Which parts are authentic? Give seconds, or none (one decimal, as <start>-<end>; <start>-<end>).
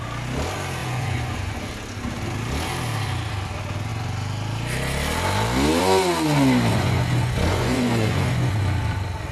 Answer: 0.0-0.8; 1.6-6.7; 8.6-9.3